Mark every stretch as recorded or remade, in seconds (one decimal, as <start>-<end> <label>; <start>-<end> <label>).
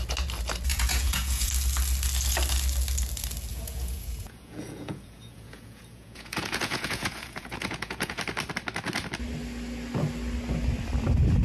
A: 0.0-0.7 recorded; 0.7-1.5 remade; 1.5-3.5 recorded; 3.5-8.2 remade; 8.2-11.4 recorded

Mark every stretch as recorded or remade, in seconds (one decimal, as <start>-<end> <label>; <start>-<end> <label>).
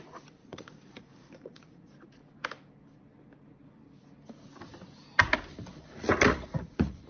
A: 0.0-2.2 remade; 2.2-5.8 recorded; 5.8-7.1 remade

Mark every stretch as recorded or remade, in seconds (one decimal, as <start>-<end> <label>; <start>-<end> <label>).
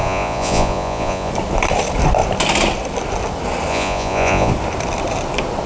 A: 0.0-1.3 remade; 1.3-3.7 recorded; 3.7-4.5 remade; 4.5-5.7 recorded